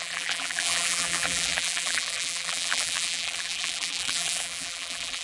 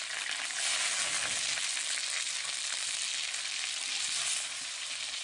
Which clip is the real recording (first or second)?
second